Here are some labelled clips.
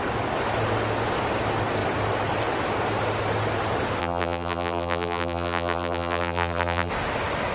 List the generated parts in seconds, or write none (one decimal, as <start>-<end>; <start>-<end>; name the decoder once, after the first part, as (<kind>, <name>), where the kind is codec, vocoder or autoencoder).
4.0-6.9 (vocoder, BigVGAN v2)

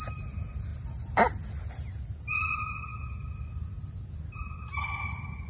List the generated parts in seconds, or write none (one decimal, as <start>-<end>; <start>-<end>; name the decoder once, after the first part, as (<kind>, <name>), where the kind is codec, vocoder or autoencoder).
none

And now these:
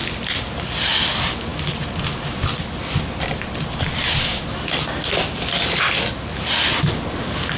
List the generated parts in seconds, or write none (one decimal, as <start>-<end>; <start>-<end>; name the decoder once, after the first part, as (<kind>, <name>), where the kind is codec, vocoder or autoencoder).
none

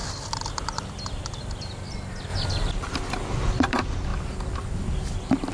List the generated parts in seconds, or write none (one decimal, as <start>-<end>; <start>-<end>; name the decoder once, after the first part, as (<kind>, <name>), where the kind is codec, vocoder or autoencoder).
0.0-1.4 (vocoder, BigVGAN v2); 4.1-4.8

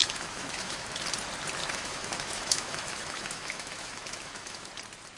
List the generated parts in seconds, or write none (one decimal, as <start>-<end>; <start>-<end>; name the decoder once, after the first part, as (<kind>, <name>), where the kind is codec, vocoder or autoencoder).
0.0-1.0 (autoencoder, DAC-VAE); 1.6-4.7

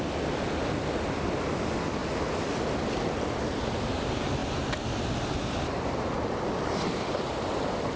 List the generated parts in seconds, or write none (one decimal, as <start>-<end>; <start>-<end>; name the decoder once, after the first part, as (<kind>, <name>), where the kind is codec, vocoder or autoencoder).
none